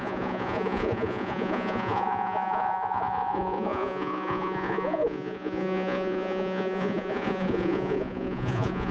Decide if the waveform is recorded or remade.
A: remade